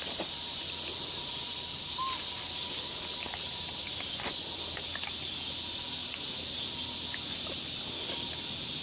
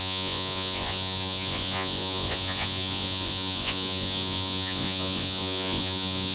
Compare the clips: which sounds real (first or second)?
first